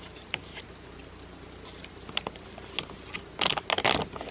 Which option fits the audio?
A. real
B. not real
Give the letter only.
A